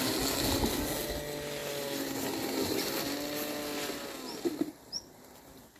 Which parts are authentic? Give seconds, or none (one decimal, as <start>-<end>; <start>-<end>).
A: 0.0-5.8